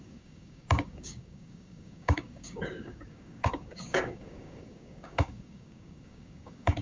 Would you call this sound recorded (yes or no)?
no